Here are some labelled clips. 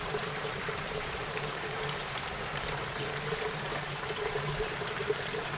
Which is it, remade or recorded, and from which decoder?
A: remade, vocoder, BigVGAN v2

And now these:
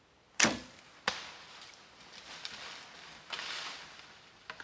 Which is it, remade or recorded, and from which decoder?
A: recorded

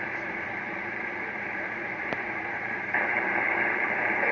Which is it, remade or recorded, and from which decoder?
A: remade, vocoder, BigVGAN v2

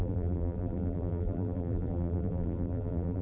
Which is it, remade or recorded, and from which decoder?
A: remade, vocoder, BigVGAN v2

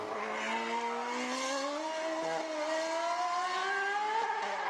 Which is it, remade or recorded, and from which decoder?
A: recorded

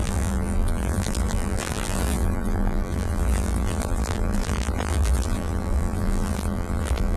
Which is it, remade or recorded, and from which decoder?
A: remade, vocoder, BigVGAN v2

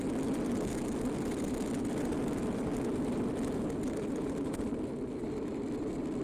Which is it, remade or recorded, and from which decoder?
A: recorded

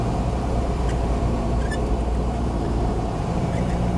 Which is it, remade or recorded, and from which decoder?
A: remade, vocoder, BigVGAN v2